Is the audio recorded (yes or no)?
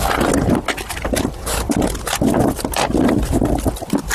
yes